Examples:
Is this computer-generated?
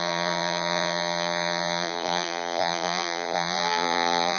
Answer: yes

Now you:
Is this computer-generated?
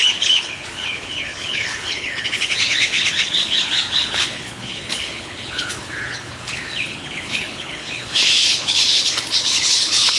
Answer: yes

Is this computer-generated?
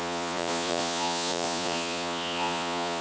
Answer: yes